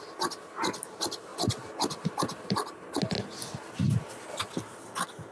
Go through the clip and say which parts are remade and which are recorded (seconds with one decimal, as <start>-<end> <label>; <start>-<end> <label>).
0.0-5.3 recorded